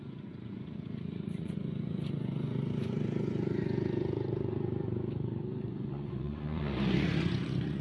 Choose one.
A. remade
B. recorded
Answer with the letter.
A